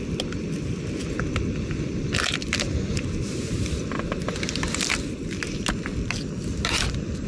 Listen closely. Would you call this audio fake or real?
real